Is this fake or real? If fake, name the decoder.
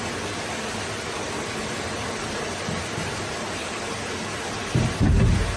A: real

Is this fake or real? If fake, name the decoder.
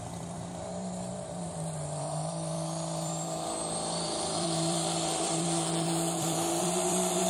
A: fake, vocoder, BigVGAN v2